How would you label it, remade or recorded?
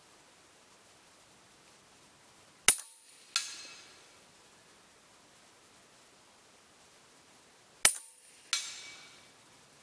recorded